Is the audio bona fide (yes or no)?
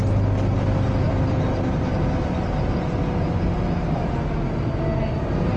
yes